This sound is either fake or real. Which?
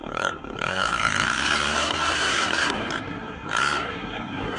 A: fake